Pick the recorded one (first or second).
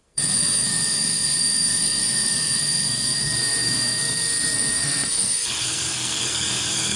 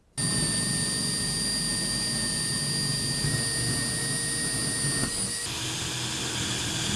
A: second